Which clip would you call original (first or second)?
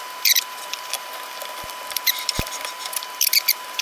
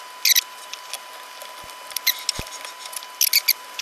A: second